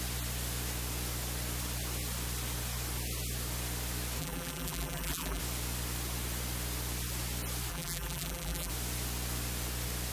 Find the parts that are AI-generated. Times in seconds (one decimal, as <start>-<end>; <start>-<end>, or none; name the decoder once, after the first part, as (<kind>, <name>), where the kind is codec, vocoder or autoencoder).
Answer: 4.2-5.4 (vocoder, BigVGAN v2); 7.7-8.7